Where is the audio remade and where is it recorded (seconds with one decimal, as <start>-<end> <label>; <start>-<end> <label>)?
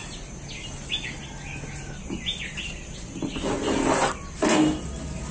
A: 0.0-5.3 recorded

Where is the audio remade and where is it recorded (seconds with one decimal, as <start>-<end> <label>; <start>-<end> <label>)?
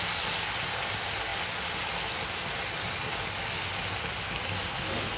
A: 0.0-5.2 recorded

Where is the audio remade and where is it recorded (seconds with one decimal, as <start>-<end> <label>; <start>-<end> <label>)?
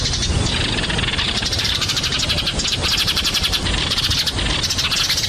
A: 0.0-1.1 recorded; 1.1-2.0 remade; 2.0-2.5 recorded; 2.5-4.1 remade; 4.1-5.3 recorded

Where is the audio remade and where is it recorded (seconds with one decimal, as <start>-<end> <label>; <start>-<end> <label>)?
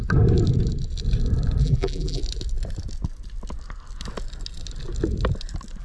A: 0.0-1.6 recorded; 1.6-2.2 remade; 2.2-5.8 recorded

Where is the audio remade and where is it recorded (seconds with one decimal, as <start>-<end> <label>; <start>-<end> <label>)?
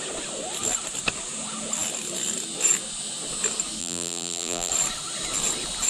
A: 0.0-3.8 recorded; 3.8-4.7 remade; 4.7-5.9 recorded